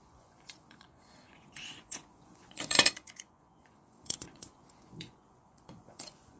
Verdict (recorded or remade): remade